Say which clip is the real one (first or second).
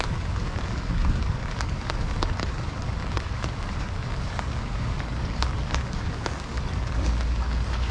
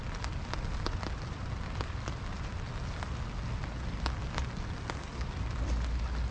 second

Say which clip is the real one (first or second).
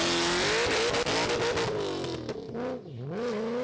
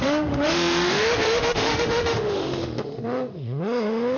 first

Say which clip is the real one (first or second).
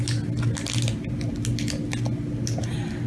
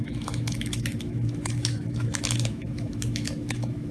first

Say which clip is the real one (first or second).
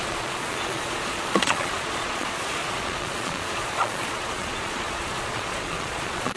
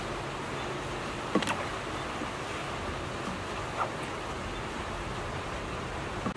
second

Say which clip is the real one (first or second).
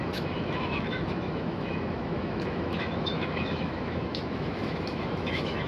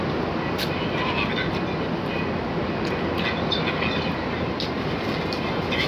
second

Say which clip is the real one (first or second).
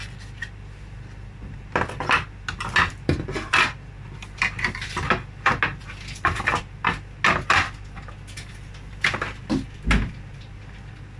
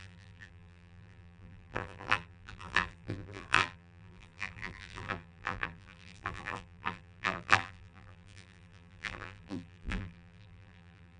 first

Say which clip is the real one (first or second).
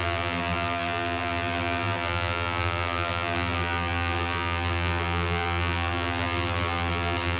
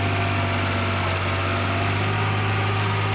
second